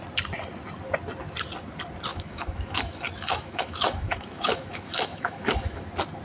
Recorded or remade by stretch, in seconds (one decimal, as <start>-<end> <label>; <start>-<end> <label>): 0.0-2.1 recorded; 2.1-5.8 remade; 5.8-6.2 recorded